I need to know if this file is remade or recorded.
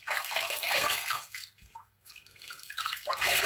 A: remade